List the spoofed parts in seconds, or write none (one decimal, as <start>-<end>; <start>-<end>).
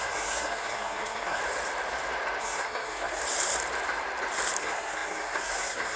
0.0-1.4; 2.4-3.2; 4.6-6.0